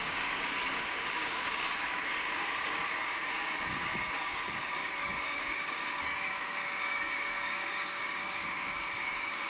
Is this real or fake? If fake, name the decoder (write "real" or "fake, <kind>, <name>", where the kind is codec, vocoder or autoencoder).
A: fake, codec, DAC